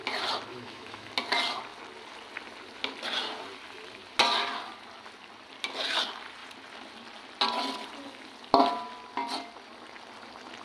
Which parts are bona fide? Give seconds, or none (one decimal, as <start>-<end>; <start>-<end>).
0.0-0.5; 1.1-10.6